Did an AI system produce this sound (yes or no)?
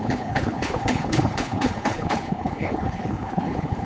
yes